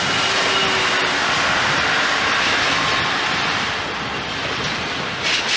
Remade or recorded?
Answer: recorded